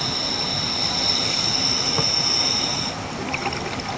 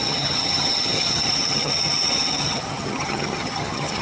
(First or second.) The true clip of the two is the first